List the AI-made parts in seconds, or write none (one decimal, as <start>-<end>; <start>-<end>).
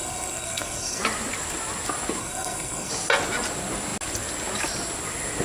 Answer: 0.0-1.0; 2.2-2.9